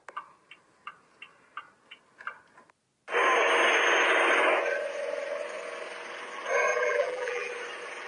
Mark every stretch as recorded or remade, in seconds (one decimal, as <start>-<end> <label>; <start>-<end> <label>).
0.0-6.7 recorded; 6.7-7.5 remade; 7.5-8.1 recorded